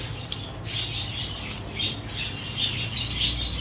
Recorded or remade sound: recorded